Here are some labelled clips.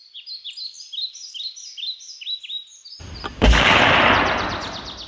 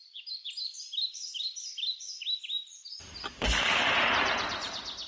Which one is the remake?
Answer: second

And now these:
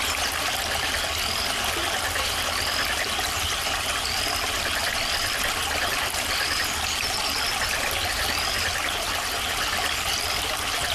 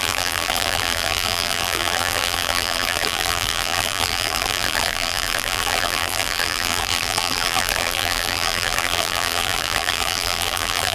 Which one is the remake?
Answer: second